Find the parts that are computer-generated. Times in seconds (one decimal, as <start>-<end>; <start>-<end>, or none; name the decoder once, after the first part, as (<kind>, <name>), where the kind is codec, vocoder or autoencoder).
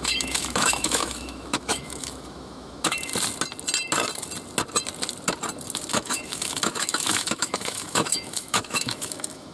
0.0-3.1 (autoencoder, DAC-VAE); 5.9-9.5